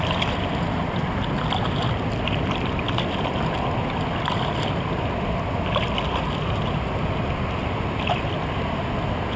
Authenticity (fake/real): real